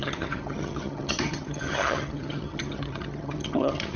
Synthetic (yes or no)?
yes